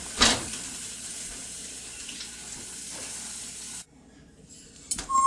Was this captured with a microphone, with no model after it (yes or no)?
yes